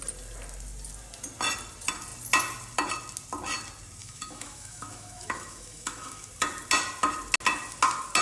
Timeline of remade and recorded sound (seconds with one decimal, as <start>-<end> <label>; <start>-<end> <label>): 0.0-4.0 recorded; 4.0-6.3 remade; 6.3-8.2 recorded

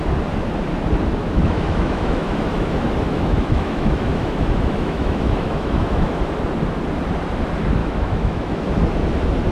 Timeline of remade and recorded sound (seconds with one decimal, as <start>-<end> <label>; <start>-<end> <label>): 0.0-1.2 recorded; 1.2-6.2 remade; 6.2-7.8 recorded; 7.8-8.7 remade; 8.7-9.5 recorded

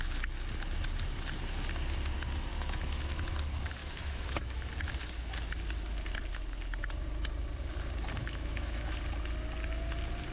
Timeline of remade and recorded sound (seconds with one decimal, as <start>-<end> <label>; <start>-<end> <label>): 0.0-2.5 recorded; 2.5-3.2 remade; 3.2-3.8 recorded; 3.8-4.7 remade; 4.7-8.2 recorded; 8.2-9.0 remade; 9.0-10.3 recorded

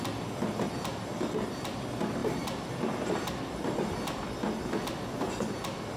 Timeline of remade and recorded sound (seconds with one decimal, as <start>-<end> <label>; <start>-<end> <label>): 0.0-6.0 recorded